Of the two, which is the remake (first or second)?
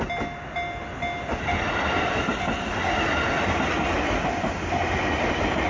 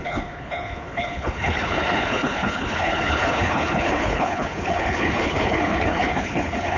second